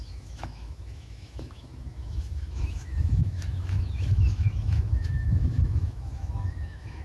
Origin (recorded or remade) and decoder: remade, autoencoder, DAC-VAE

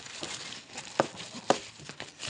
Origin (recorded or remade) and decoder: recorded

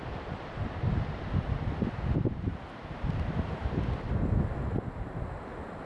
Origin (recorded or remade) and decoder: recorded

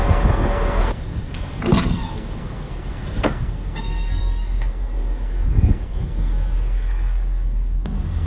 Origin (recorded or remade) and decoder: remade, codec, SNAC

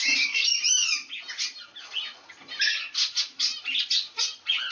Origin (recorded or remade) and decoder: recorded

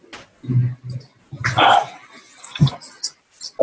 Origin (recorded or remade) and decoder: recorded